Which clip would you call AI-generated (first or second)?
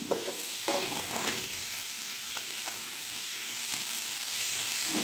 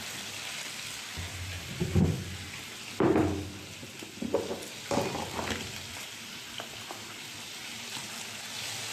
first